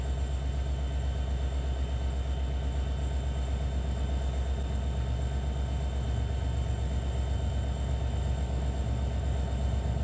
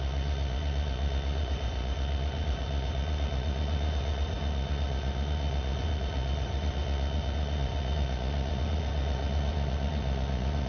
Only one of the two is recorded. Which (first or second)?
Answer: first